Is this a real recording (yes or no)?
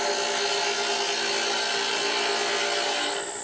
yes